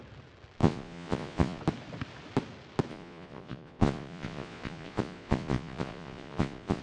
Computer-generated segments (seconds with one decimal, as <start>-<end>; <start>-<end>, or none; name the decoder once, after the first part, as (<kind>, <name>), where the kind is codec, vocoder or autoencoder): 0.6-1.6 (vocoder, Vocos); 2.9-6.8